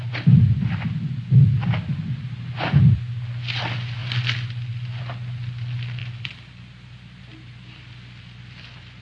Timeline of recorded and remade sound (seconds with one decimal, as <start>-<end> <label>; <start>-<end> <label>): 0.0-9.0 recorded